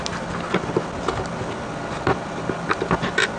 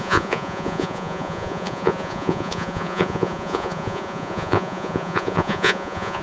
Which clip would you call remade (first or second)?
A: second